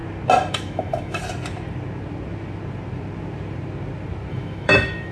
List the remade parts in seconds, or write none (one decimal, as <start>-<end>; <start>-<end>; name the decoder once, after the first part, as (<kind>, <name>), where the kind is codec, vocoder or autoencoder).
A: 0.5-1.2 (autoencoder, DAC-VAE); 4.3-5.1